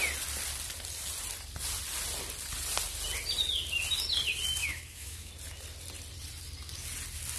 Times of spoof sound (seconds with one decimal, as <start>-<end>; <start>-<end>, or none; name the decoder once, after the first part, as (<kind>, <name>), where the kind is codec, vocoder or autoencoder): 4.6-5.3 (autoencoder, DAC-VAE)